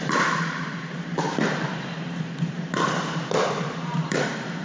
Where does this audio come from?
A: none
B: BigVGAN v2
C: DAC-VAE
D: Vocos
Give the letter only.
B